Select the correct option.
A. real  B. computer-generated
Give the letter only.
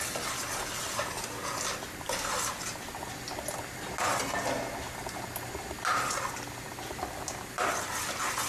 A